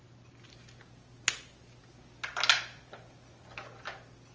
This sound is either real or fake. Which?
real